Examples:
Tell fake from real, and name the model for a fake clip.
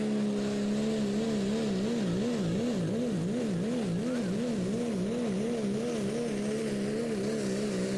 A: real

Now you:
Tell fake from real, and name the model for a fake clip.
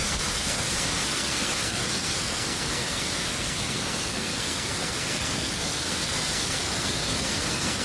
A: fake, codec, SNAC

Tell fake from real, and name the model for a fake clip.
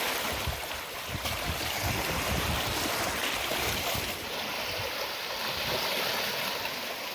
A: real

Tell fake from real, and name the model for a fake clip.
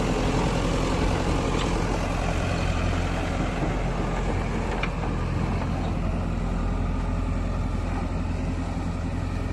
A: real